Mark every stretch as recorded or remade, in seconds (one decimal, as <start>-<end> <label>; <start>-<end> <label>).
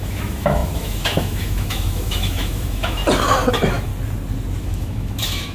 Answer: 0.0-3.0 remade; 3.0-3.5 recorded; 3.5-3.9 remade; 3.9-4.6 recorded; 4.6-5.5 remade